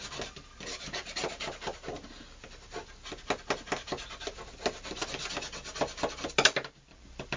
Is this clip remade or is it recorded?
recorded